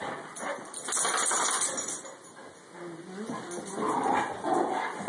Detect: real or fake real